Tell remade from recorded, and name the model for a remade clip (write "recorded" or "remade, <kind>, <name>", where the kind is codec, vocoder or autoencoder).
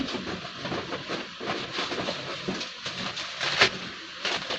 recorded